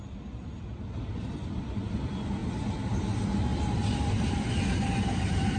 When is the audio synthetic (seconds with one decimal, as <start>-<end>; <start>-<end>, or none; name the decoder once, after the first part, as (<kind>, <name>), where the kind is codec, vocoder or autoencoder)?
3.5-5.6 (vocoder, BigVGAN v2)